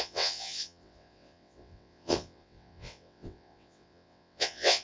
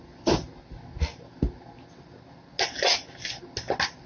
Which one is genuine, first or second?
second